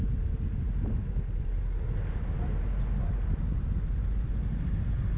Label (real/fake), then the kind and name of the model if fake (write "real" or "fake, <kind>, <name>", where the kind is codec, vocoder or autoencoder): real